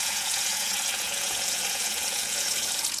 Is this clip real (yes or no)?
no